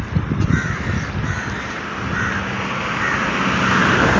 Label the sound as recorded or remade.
recorded